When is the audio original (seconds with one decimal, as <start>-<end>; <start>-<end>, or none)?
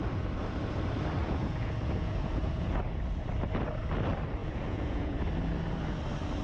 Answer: 0.0-1.2; 2.8-4.4; 5.2-6.4